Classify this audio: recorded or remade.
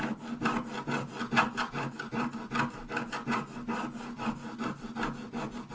recorded